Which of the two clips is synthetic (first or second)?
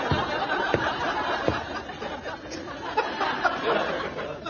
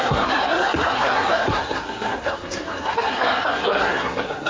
second